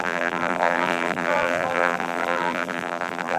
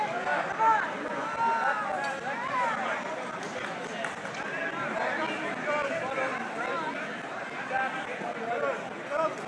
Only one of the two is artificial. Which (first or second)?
first